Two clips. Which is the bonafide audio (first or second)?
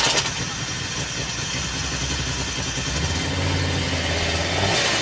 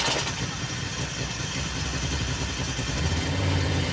first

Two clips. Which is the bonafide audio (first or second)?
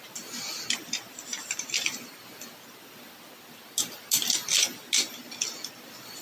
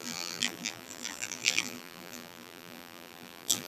first